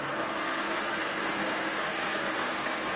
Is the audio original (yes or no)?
no